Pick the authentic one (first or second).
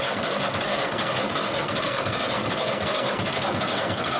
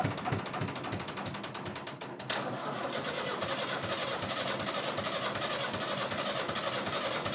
second